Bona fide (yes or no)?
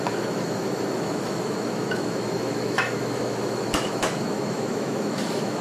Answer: no